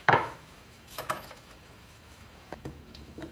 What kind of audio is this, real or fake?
fake